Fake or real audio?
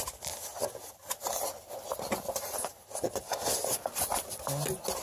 real